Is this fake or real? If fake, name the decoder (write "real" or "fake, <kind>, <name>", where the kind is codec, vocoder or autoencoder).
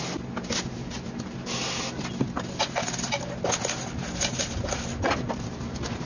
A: real